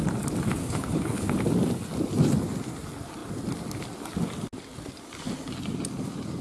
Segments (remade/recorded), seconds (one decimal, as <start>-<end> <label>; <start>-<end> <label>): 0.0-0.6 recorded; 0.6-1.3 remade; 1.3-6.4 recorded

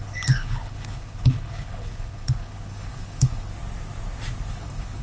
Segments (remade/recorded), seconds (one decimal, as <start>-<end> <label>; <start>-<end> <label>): 0.0-3.5 remade; 3.5-4.5 recorded; 4.5-5.0 remade

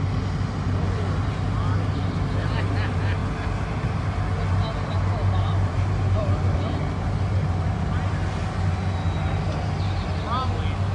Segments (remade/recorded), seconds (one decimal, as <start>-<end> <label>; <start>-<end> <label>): 0.0-10.9 recorded